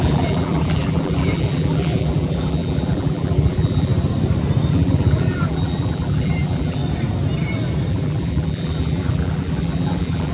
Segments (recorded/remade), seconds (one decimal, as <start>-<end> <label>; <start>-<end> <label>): 0.0-3.9 remade; 3.9-4.7 recorded; 4.7-6.8 remade; 6.8-7.9 recorded; 7.9-10.3 remade